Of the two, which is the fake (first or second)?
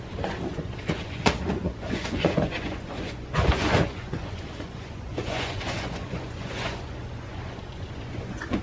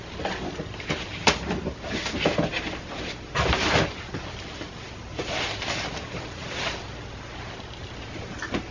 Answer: first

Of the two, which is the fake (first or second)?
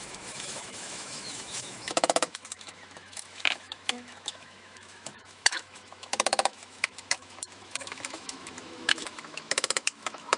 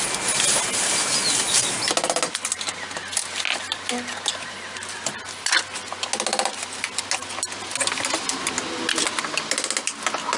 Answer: first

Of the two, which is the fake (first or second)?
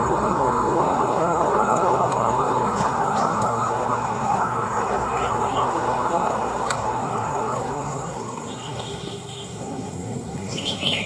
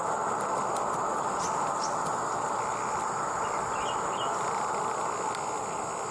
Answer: first